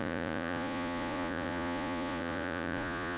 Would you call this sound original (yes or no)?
no